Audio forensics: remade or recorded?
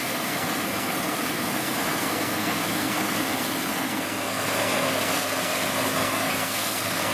remade